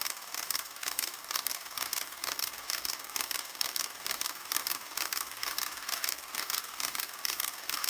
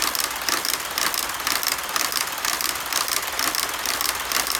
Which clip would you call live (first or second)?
second